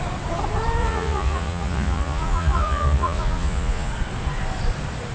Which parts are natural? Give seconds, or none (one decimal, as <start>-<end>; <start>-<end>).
0.0-0.8; 3.9-5.1